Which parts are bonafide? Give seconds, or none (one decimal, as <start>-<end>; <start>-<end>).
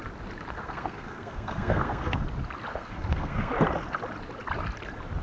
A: 0.0-0.5; 2.2-2.7; 3.5-5.2